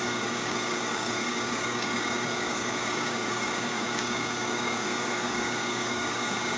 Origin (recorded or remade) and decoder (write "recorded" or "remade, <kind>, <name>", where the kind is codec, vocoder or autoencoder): remade, codec, DAC